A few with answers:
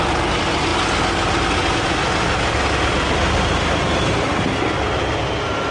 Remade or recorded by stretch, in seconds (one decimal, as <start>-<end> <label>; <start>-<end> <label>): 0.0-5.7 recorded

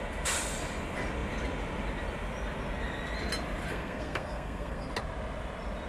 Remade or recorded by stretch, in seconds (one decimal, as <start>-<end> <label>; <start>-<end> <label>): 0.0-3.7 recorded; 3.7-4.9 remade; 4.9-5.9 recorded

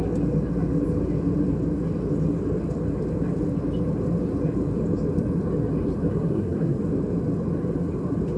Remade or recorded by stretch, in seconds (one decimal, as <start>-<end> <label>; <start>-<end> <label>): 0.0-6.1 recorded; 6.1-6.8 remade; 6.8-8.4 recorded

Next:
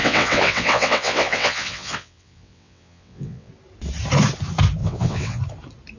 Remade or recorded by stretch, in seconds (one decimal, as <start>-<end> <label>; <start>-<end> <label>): 0.0-3.5 remade; 3.5-4.8 recorded; 4.8-5.4 remade; 5.4-6.0 recorded

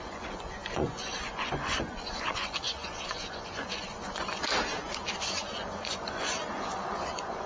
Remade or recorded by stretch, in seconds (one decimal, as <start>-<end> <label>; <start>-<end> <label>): 0.0-4.4 remade; 4.4-5.2 recorded; 5.2-7.5 remade

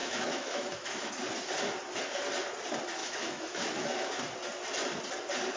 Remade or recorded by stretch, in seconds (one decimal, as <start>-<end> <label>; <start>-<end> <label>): 0.0-1.1 remade; 1.1-3.0 recorded; 3.0-4.1 remade; 4.1-5.6 recorded

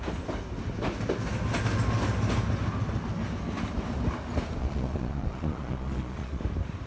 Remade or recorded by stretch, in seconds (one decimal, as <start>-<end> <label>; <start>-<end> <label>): 0.0-4.6 recorded; 4.6-6.4 remade; 6.4-6.9 recorded